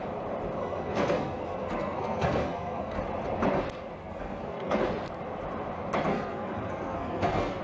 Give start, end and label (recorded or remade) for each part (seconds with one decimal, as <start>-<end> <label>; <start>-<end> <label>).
0.0-0.6 recorded; 0.6-3.0 remade; 3.0-4.0 recorded; 4.0-4.8 remade; 4.8-6.1 recorded; 6.1-7.6 remade